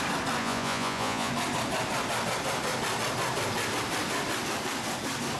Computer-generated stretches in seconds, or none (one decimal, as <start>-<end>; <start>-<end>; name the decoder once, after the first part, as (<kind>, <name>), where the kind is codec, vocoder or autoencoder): 0.4-1.3 (vocoder, Vocos)